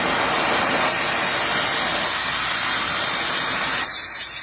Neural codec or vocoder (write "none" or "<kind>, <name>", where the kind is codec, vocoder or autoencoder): none